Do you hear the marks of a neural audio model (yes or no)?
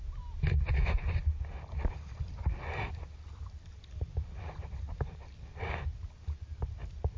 no